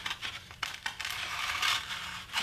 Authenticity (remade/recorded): recorded